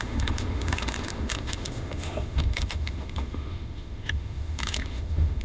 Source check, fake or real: fake